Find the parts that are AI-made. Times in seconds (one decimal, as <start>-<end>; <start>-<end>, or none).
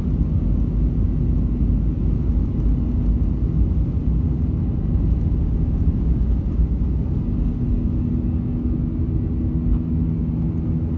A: none